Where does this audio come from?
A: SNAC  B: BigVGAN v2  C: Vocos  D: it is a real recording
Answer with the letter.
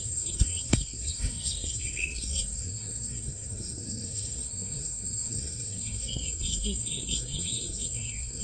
A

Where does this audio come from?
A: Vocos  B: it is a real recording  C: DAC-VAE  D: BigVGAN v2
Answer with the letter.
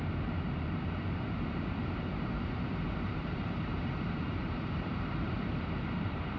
D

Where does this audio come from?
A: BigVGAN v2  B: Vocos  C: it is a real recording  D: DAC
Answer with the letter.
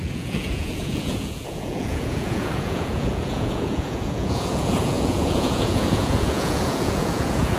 B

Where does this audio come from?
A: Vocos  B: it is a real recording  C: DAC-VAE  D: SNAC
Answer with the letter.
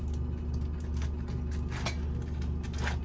B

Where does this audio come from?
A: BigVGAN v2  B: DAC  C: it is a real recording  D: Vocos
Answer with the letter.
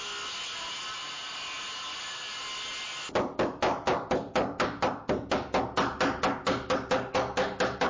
C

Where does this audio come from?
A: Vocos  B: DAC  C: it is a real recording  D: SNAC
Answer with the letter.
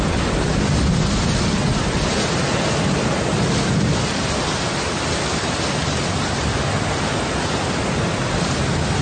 C